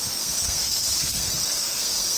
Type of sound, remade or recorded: remade